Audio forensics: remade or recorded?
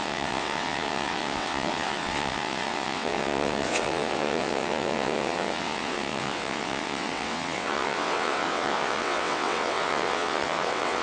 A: remade